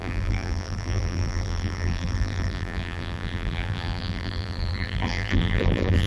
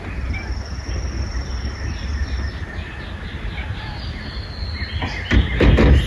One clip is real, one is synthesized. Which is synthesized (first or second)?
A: first